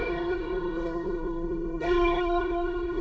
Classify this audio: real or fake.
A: fake